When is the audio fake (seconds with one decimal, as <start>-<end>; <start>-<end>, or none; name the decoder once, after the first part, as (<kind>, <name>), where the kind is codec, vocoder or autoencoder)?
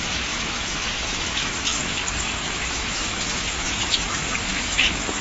0.0-5.2 (autoencoder, DAC-VAE)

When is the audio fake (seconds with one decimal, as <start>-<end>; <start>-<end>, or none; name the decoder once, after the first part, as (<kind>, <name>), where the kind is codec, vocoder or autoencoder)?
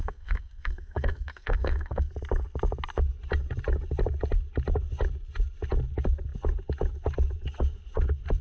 0.0-2.1 (codec, SNAC)